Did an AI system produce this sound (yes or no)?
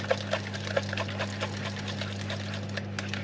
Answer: no